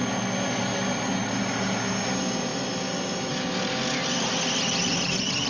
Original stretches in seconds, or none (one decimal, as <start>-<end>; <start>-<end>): 0.0-5.5